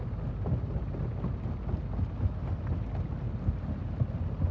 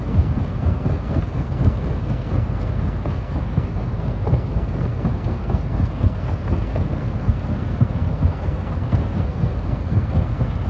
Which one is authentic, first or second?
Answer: first